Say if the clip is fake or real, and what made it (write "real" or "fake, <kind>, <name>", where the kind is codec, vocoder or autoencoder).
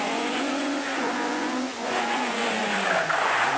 fake, vocoder, Vocos